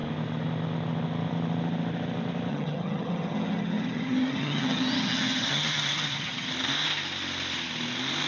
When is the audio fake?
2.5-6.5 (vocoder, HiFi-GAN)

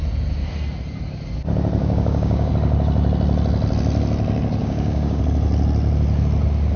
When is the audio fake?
1.8-2.5 (codec, DAC); 4.6-5.2

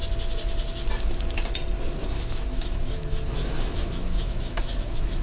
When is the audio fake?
2.0-5.2 (autoencoder, DAC-VAE)

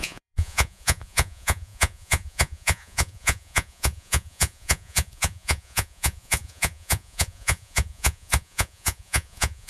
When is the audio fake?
0.0-9.7 (vocoder, Vocos)

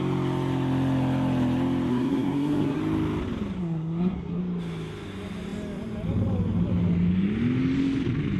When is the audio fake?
1.9-2.8 (codec, SNAC); 3.6-4.4

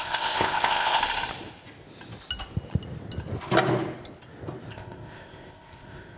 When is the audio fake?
0.0-1.0 (codec, ZipCodec); 4.7-6.2

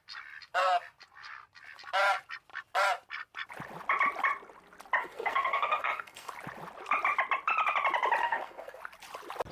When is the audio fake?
5.0-6.3 (codec, SNAC); 8.2-8.8